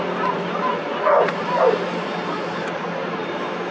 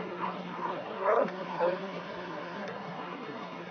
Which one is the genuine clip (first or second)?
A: first